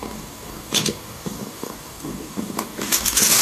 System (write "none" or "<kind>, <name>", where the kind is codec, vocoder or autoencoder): codec, DAC